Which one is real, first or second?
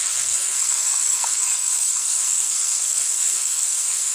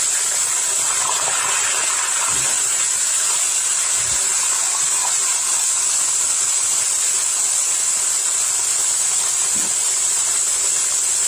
second